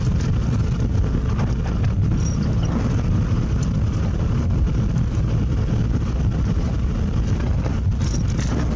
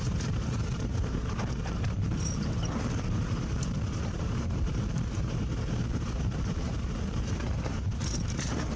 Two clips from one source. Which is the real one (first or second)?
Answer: first